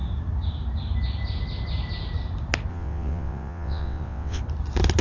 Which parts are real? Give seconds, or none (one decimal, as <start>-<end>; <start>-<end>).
0.0-2.7; 4.4-5.0